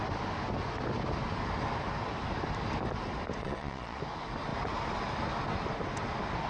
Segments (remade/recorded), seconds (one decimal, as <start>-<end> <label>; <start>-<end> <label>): 0.0-3.4 recorded; 3.4-4.0 remade; 4.0-6.5 recorded